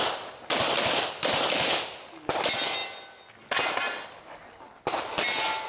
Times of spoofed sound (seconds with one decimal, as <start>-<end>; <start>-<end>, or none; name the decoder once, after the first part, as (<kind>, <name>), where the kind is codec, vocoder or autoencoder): none